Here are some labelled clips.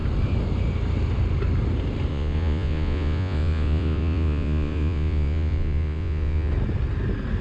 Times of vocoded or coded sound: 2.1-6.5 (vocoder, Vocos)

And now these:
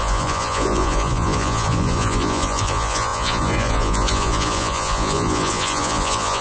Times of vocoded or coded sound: 0.0-6.4 (vocoder, Vocos)

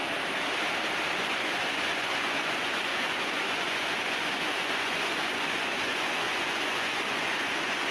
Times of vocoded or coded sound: 1.2-7.9 (vocoder, Vocos)

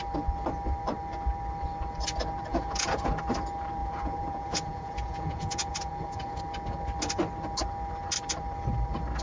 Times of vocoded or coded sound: 2.5-3.1 (vocoder, Vocos); 3.8-6.4

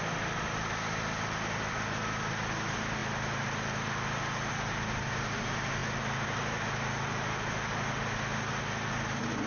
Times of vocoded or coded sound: none

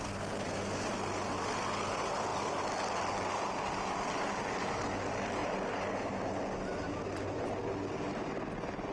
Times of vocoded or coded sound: none

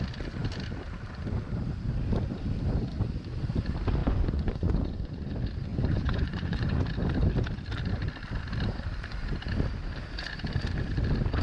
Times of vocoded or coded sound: 4.0-5.3 (vocoder, Vocos); 5.7-6.8

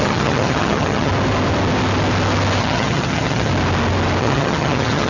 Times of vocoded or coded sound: 0.0-1.1 (vocoder, HiFi-GAN); 2.6-3.5; 4.2-5.1